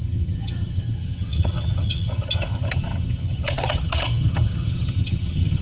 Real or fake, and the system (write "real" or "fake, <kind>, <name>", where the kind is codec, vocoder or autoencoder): fake, vocoder, HiFi-GAN